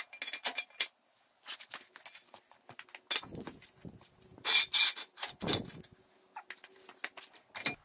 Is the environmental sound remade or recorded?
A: recorded